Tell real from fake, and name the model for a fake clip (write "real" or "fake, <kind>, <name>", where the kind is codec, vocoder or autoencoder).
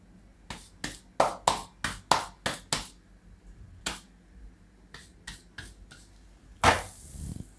real